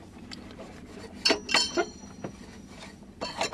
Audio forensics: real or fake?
real